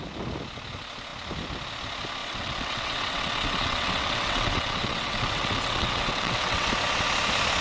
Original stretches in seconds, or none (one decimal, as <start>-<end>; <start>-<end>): 0.0-2.2; 6.7-7.6